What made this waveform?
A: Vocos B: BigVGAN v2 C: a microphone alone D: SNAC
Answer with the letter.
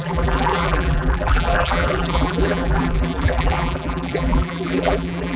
B